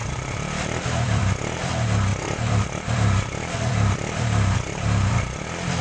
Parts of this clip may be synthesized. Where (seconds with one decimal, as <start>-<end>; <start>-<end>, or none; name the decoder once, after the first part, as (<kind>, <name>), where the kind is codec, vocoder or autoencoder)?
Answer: 0.0-1.7 (vocoder, BigVGAN v2); 2.1-5.8